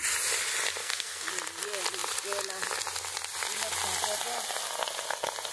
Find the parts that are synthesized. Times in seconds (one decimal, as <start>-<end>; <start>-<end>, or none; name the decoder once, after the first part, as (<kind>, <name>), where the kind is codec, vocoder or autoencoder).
0.8-1.3 (codec, SNAC)